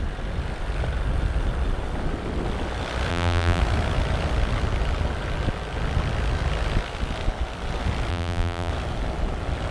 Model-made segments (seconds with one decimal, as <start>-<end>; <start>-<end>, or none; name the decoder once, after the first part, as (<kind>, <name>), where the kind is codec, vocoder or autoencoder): 3.1-3.6 (vocoder, BigVGAN v2); 8.1-8.7